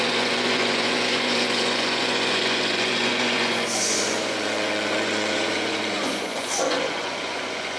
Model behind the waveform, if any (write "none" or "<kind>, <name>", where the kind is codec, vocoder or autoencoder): vocoder, Vocos